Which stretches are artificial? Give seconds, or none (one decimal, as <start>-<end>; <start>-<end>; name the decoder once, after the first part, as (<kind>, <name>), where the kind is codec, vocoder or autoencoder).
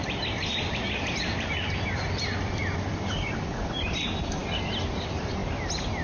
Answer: 0.0-3.6 (vocoder, BigVGAN v2)